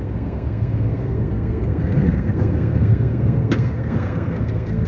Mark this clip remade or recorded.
remade